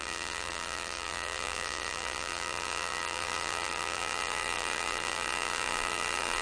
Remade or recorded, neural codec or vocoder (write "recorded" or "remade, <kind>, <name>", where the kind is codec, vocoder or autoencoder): remade, vocoder, BigVGAN v2